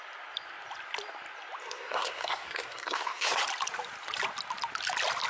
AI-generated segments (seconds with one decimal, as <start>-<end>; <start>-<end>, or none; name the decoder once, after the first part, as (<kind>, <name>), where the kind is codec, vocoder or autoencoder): 1.6-3.4 (codec, SNAC)